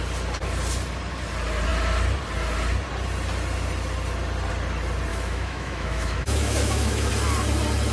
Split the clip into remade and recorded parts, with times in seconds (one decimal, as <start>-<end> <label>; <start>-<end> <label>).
0.0-5.1 recorded; 5.1-7.1 remade; 7.1-7.9 recorded